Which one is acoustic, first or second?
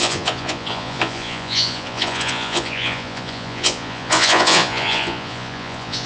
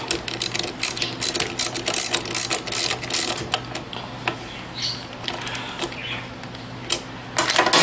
second